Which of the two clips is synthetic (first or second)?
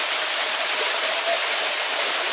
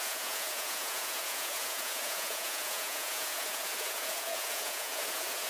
second